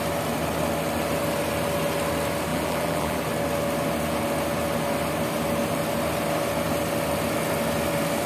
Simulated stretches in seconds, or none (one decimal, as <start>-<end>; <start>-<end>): 2.5-3.2